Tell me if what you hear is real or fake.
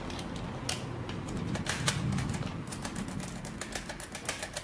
real